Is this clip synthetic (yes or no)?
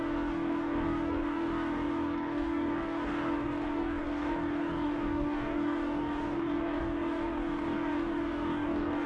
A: yes